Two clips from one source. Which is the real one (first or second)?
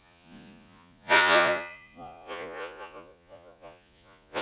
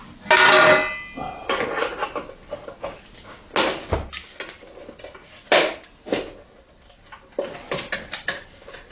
second